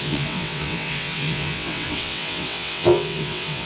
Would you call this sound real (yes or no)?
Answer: no